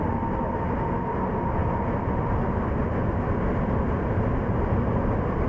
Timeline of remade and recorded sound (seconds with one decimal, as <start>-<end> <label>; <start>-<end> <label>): 0.0-5.5 recorded